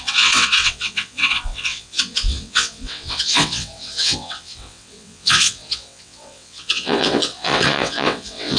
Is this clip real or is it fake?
fake